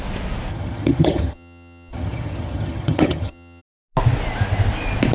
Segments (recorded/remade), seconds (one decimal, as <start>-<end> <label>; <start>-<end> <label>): 0.0-0.5 recorded; 0.5-3.6 remade; 3.6-5.1 recorded